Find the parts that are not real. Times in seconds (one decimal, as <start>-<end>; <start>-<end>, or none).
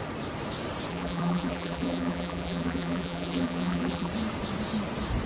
0.9-4.1